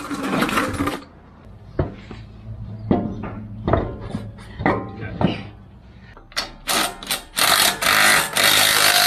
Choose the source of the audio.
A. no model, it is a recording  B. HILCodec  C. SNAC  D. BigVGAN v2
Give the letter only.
A